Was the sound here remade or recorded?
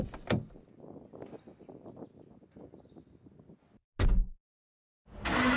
recorded